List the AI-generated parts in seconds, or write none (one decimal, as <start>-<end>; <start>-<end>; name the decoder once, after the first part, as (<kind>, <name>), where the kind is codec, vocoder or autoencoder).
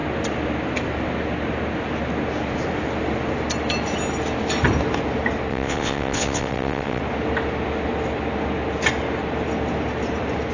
5.5-7.0 (vocoder, WaveNeXt)